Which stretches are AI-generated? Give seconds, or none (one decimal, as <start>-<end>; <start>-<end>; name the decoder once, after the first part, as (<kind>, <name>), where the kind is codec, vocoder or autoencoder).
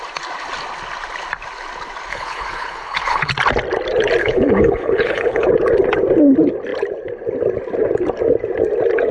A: 2.1-3.3 (codec, HILCodec); 4.2-5.5